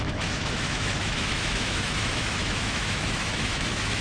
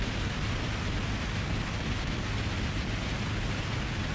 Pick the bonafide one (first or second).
second